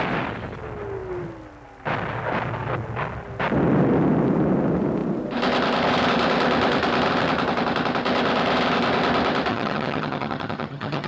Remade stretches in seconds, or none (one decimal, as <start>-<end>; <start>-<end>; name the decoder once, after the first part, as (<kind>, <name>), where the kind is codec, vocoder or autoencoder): 9.5-11.1 (vocoder, HiFi-GAN)